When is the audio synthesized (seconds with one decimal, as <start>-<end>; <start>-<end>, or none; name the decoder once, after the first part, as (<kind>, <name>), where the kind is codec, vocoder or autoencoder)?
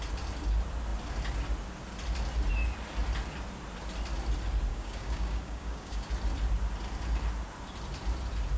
4.7-6.1 (codec, DAC)